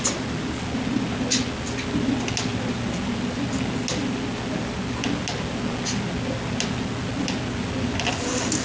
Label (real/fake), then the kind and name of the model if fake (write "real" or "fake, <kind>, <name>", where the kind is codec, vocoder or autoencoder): real